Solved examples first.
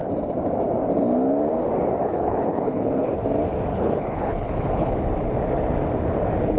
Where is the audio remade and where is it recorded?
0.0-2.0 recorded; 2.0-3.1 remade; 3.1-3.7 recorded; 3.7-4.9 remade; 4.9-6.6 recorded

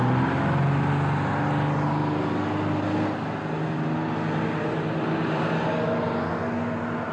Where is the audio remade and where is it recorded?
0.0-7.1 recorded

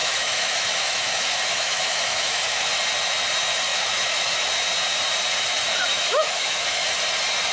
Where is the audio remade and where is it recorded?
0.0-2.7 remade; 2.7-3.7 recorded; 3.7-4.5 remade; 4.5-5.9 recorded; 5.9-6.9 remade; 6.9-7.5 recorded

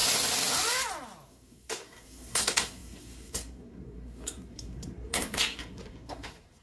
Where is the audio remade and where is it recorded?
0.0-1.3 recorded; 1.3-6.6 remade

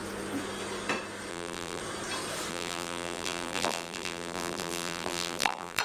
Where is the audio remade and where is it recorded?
0.0-1.3 recorded; 1.3-1.8 remade; 1.8-2.5 recorded; 2.5-5.8 remade

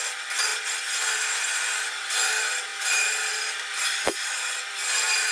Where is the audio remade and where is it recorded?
0.0-5.3 recorded

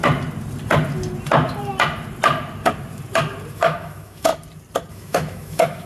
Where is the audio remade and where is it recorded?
0.0-3.5 recorded; 3.5-4.3 remade; 4.3-4.9 recorded; 4.9-5.9 remade